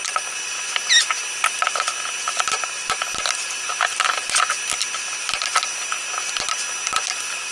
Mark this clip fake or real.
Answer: real